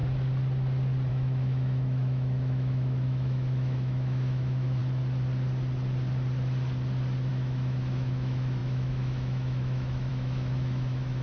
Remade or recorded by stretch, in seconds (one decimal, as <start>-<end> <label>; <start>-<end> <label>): 0.0-1.1 recorded; 1.1-4.8 remade; 4.8-7.3 recorded; 7.3-11.2 remade